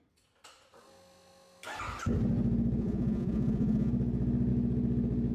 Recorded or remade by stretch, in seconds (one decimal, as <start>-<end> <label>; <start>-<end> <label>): 0.0-2.8 recorded; 2.8-3.9 remade; 3.9-5.3 recorded